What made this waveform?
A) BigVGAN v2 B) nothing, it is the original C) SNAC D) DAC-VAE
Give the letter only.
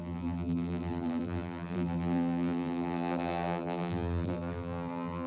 A